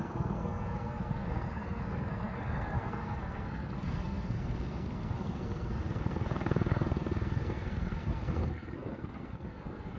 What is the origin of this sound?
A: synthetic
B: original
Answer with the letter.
A